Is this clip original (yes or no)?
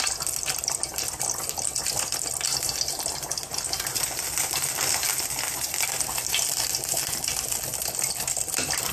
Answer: no